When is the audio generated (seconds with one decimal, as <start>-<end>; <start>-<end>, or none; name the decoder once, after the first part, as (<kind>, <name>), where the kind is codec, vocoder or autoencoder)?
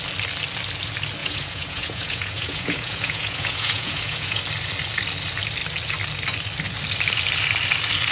1.2-4.4 (vocoder, Vocos)